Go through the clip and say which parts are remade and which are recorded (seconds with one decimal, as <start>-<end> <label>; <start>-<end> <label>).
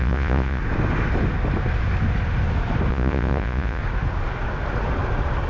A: 0.0-0.6 remade; 0.6-2.9 recorded; 2.9-3.8 remade; 3.8-5.5 recorded